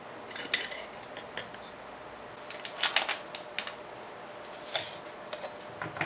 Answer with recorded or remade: recorded